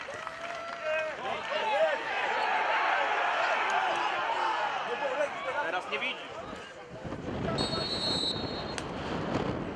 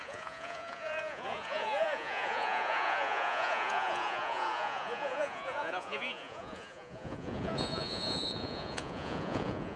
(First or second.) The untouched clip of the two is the first